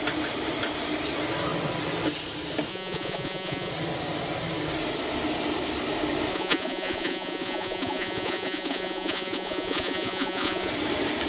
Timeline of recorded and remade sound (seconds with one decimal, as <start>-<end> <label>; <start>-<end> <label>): 0.0-2.7 recorded; 2.7-3.7 remade; 3.7-6.3 recorded; 6.3-10.7 remade; 10.7-11.3 recorded